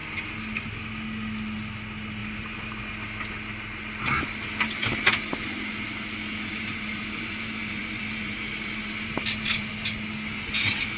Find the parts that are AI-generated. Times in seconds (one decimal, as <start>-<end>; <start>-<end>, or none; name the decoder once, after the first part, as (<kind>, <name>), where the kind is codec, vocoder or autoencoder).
2.2-2.8 (vocoder, BigVGAN v2); 6.5-9.7